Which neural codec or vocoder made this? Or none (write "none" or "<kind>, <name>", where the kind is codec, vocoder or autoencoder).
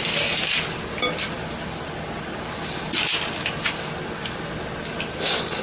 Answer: none